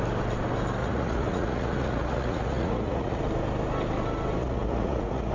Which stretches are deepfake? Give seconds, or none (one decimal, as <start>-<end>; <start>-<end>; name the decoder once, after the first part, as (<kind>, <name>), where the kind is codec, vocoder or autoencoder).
0.8-3.2 (vocoder, Vocos); 4.4-5.3